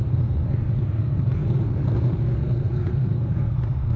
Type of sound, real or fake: fake